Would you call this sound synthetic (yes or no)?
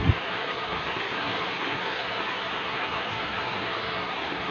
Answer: yes